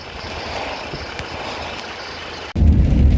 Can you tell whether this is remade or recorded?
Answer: recorded